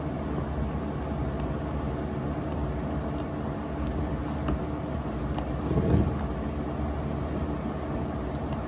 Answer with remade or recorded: recorded